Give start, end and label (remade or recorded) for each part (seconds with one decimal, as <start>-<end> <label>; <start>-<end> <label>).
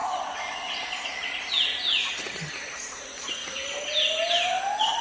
0.0-5.0 recorded